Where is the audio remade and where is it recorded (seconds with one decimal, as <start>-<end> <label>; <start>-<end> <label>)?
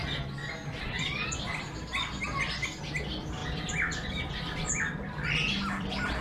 0.0-0.8 recorded; 0.8-6.2 remade